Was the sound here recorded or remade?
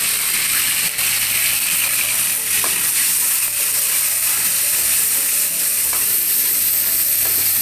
recorded